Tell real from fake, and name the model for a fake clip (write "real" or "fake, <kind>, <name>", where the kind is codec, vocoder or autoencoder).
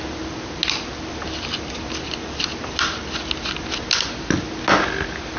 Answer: real